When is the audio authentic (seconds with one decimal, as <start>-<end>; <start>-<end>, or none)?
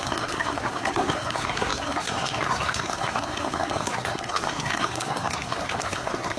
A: none